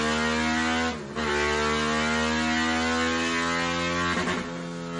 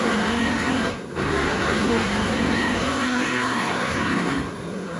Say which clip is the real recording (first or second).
first